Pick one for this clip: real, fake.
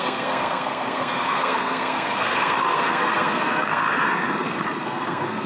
fake